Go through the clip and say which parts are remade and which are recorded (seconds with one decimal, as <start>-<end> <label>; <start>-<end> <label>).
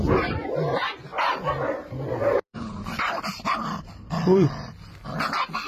0.0-1.1 recorded; 1.1-4.5 remade; 4.5-5.7 recorded